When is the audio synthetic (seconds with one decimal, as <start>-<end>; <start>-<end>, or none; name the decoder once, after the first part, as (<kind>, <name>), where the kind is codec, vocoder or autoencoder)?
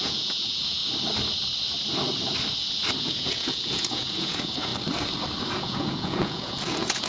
0.0-0.8 (vocoder, Vocos); 3.0-4.7; 5.5-7.1